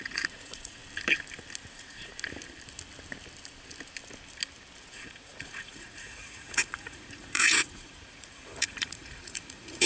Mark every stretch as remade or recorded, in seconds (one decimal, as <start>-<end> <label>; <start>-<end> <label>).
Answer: 0.0-0.8 remade; 0.8-1.7 recorded; 1.7-2.1 remade; 2.1-4.8 recorded; 4.8-9.9 remade